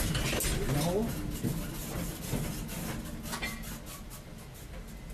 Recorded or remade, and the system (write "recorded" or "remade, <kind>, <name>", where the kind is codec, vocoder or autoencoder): recorded